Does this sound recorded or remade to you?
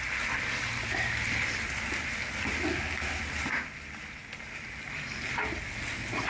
recorded